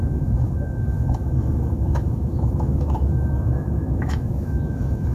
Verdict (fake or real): fake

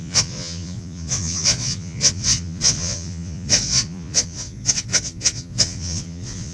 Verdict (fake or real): fake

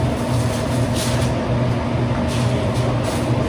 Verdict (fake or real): real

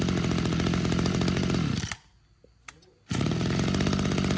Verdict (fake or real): real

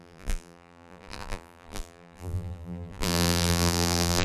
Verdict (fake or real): fake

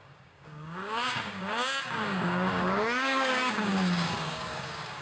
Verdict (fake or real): fake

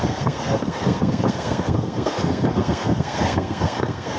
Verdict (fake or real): fake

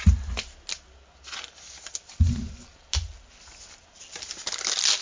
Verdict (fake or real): real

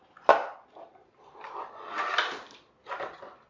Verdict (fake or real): real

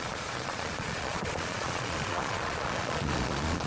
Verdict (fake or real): fake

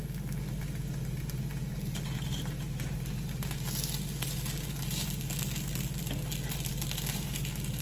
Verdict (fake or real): real